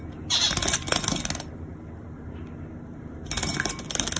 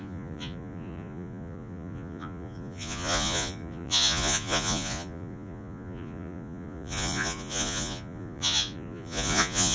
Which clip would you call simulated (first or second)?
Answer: second